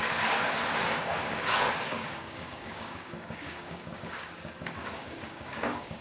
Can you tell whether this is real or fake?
fake